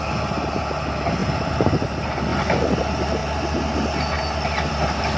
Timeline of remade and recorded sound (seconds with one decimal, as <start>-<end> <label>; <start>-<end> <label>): 0.0-1.2 recorded; 1.2-1.7 remade; 1.7-5.2 recorded